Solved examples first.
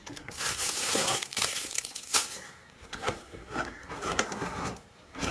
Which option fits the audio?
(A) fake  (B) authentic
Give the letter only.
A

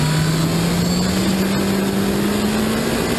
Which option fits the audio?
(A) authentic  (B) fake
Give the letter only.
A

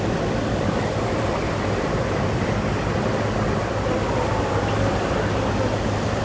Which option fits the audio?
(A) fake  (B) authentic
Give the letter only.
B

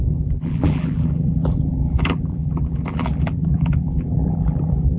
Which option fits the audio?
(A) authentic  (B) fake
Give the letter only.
B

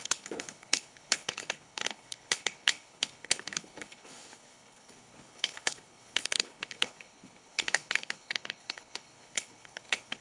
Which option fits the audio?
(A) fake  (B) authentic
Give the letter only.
A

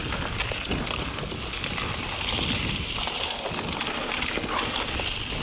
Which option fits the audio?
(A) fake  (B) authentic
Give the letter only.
B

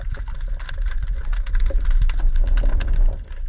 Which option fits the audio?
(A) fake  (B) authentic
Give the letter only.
B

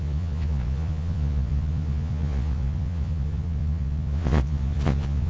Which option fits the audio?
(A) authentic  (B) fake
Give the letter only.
B